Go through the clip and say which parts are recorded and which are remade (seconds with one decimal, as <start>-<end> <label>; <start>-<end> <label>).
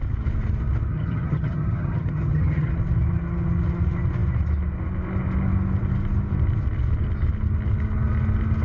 0.0-0.9 recorded; 0.9-2.7 remade; 2.7-8.6 recorded